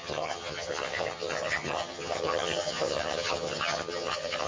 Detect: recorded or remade remade